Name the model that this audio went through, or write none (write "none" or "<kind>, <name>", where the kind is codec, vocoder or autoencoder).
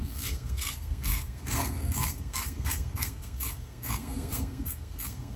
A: codec, SNAC